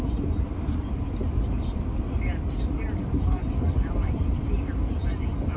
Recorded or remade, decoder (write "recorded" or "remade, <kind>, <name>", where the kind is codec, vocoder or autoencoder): remade, vocoder, BigVGAN v2